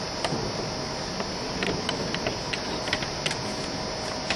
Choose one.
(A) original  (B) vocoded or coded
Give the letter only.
A